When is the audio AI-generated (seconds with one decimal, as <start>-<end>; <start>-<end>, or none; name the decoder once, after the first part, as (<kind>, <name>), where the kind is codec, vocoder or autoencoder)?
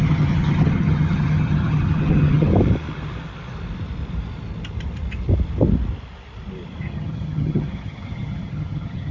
0.0-2.5 (vocoder, HiFi-GAN); 6.8-9.1